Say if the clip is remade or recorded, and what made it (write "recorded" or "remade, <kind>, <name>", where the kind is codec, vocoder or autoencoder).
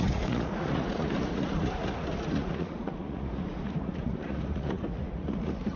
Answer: remade, vocoder, Vocos